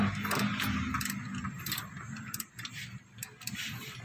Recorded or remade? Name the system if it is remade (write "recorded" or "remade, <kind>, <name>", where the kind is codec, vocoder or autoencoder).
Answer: recorded